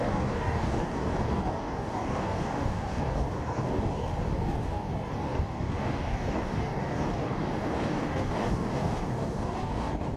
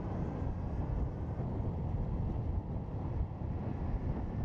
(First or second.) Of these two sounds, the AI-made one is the first